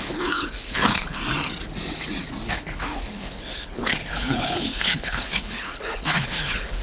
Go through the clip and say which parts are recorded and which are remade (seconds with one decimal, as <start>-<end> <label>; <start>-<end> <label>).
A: 0.0-1.2 remade; 1.2-2.5 recorded; 2.5-6.8 remade